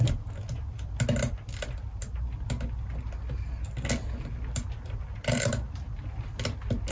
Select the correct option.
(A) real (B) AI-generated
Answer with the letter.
A